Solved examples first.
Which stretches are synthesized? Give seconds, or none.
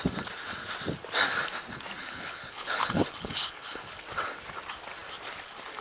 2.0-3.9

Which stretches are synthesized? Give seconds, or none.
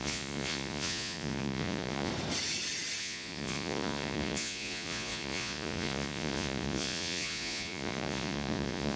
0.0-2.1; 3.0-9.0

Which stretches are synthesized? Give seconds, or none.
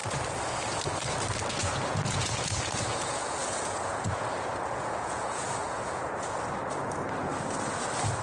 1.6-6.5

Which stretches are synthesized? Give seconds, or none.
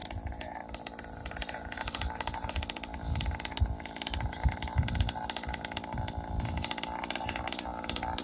none